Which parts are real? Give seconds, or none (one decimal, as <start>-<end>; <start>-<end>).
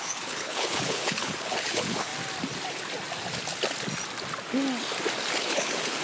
2.1-5.4